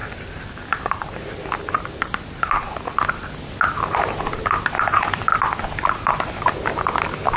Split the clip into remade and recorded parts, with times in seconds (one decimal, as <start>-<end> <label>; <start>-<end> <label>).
0.0-7.4 recorded